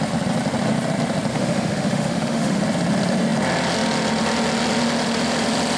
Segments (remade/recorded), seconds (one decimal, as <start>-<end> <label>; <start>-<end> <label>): 0.0-1.3 recorded; 1.3-2.6 remade; 2.6-5.8 recorded